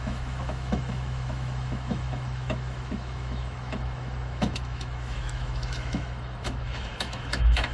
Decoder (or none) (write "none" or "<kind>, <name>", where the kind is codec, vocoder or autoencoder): autoencoder, DAC-VAE